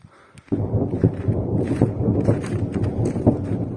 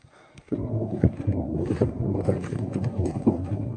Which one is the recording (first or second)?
first